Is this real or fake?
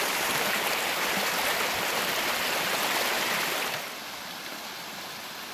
real